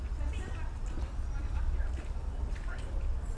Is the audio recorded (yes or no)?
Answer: yes